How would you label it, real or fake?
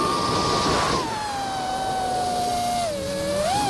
real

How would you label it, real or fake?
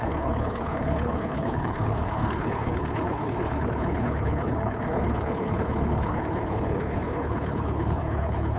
fake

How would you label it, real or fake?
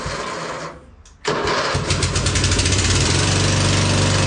real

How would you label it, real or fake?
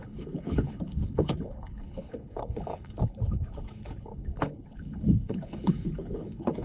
fake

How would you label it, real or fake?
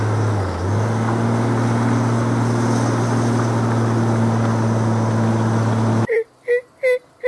real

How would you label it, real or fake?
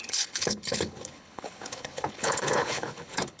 fake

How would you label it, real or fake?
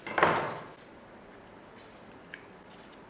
real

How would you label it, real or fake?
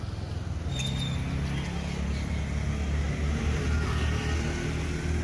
real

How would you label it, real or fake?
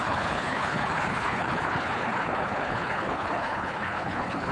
fake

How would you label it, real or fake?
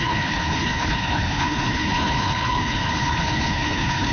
fake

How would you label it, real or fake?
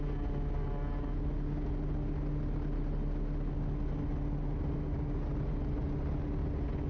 real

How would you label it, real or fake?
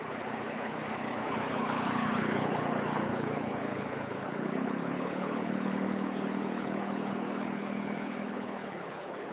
fake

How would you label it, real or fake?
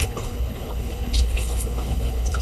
fake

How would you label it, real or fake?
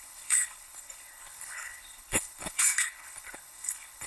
fake